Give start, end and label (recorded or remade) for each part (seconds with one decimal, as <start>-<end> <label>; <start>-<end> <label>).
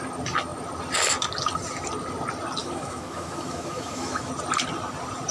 0.0-2.6 recorded; 2.6-4.3 remade; 4.3-5.3 recorded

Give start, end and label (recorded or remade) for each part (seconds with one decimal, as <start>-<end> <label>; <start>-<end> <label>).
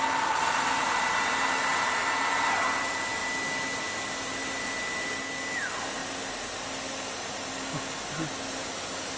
0.0-9.2 recorded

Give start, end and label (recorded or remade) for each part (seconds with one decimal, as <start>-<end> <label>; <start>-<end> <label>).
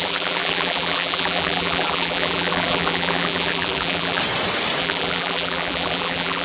0.0-4.2 remade; 4.2-4.8 recorded; 4.8-6.4 remade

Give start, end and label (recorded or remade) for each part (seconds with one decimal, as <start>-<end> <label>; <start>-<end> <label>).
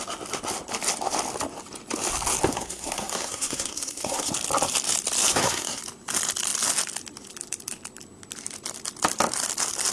0.0-2.5 recorded; 2.5-4.3 remade; 4.3-5.3 recorded; 5.3-5.8 remade; 5.8-9.9 recorded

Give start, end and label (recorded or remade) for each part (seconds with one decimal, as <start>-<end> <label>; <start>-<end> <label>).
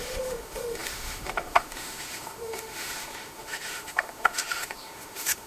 0.0-5.5 remade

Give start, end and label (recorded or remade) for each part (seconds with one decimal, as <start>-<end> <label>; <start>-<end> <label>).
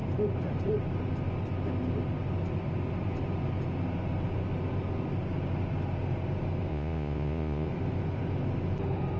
0.0-6.7 recorded; 6.7-7.7 remade; 7.7-9.2 recorded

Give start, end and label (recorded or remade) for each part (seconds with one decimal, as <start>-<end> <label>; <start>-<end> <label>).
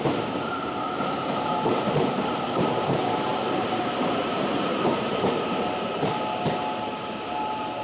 0.0-7.8 remade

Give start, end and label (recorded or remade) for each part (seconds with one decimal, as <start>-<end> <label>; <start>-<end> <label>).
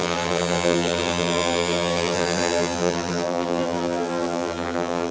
0.0-5.1 remade